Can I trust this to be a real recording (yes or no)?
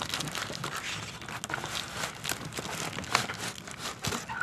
yes